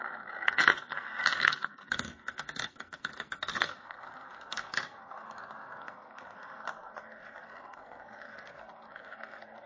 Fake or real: fake